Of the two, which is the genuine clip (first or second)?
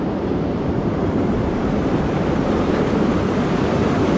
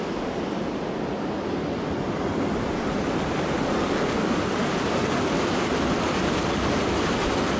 second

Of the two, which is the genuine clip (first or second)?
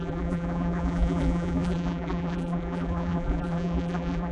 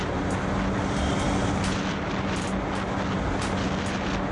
second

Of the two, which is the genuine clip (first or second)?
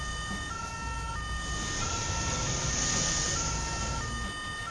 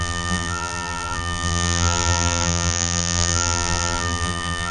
first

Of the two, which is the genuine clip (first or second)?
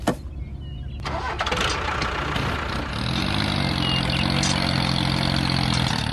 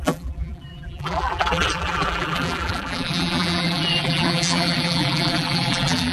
first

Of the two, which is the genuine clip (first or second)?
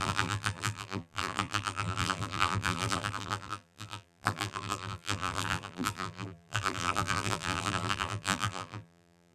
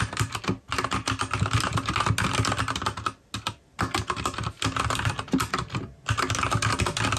second